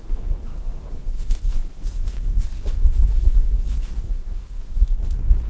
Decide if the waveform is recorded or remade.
remade